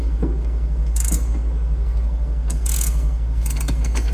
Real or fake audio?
fake